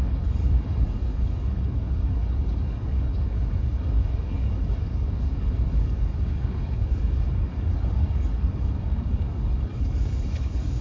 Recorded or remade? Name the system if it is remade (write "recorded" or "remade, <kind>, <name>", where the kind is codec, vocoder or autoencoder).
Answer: remade, codec, DAC